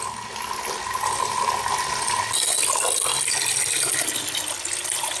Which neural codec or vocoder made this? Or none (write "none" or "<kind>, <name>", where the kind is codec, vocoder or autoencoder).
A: none